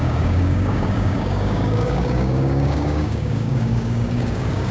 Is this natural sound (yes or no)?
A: no